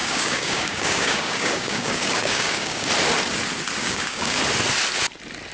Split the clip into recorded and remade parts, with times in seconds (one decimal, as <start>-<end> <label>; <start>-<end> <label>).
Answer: 0.0-2.9 remade; 2.9-3.8 recorded; 3.8-4.4 remade; 4.4-5.5 recorded